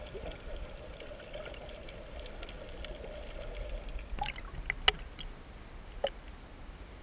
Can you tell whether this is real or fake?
real